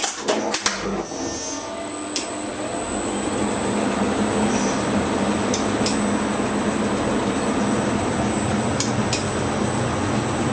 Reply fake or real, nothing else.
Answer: real